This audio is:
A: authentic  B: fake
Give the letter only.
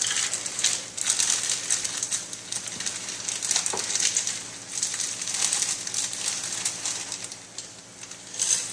A